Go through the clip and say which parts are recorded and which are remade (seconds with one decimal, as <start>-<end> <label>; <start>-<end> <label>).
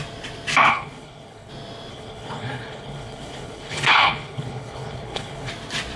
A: 0.0-0.7 recorded; 0.7-1.5 remade; 1.5-1.9 recorded; 1.9-5.5 remade; 5.5-6.0 recorded